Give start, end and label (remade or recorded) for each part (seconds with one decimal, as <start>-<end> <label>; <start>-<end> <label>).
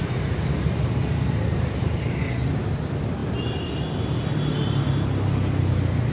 0.0-6.1 recorded